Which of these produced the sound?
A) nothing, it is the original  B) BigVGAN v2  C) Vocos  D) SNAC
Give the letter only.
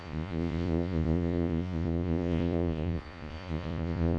C